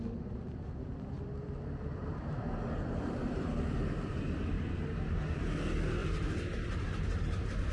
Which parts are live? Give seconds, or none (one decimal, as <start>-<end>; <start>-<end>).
0.0-2.0; 4.6-7.7